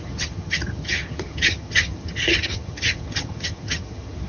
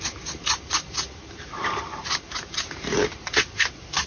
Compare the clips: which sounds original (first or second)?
second